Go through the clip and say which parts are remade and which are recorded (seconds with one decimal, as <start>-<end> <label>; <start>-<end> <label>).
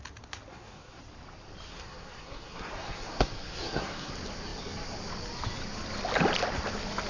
0.0-0.5 recorded; 0.5-1.0 remade; 1.0-1.7 recorded; 1.7-4.1 remade; 4.1-7.1 recorded